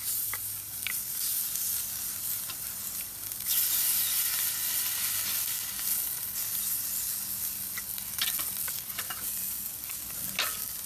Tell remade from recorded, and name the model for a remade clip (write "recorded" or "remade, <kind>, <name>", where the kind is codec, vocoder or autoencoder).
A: recorded